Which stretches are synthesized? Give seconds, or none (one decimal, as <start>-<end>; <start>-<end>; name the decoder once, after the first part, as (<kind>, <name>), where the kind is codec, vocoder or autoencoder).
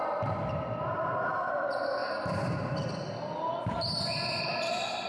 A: none